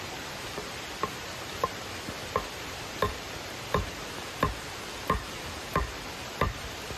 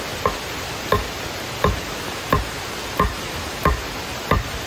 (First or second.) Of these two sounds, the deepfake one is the first